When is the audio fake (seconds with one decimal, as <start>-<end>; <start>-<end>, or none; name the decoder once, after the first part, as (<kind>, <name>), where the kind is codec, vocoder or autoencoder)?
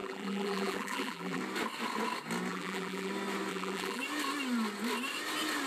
0.0-1.4 (vocoder, BigVGAN v2); 2.5-3.1; 3.5-4.0